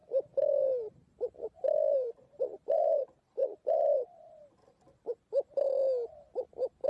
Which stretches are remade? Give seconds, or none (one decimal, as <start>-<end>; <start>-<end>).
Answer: 0.0-2.4